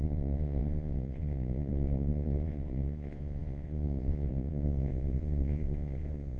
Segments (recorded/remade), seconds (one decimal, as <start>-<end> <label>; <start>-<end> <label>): 0.0-6.4 remade